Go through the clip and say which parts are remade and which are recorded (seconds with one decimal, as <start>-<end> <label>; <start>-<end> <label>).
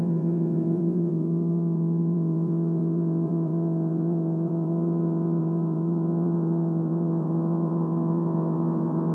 0.0-9.1 remade